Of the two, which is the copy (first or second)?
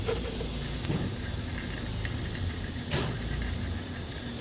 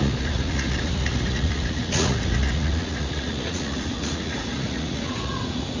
second